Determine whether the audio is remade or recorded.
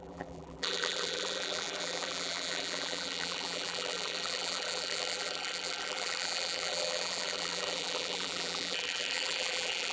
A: remade